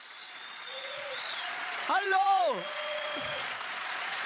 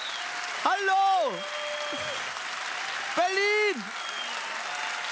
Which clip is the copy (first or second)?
first